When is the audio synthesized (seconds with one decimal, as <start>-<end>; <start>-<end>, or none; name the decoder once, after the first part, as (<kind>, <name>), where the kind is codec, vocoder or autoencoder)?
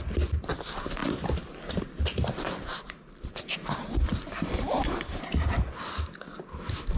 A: 1.0-5.2 (vocoder, BigVGAN v2)